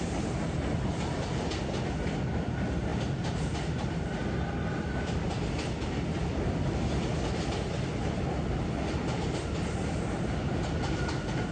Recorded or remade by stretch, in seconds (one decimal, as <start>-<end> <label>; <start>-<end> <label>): 0.0-11.5 recorded